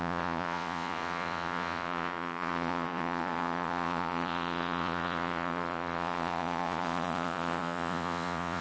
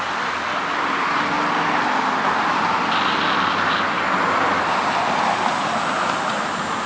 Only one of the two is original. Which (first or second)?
second